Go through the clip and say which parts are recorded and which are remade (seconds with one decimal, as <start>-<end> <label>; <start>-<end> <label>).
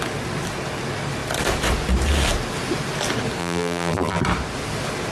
0.0-3.4 recorded; 3.4-4.2 remade; 4.2-5.1 recorded